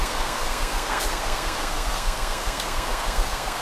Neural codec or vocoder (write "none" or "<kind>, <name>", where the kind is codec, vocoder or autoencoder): codec, SNAC